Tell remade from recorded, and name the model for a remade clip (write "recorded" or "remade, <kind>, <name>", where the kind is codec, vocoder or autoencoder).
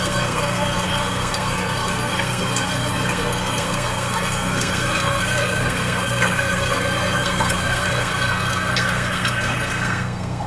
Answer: remade, codec, SNAC